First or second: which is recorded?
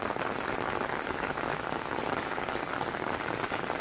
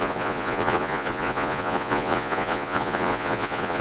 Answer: first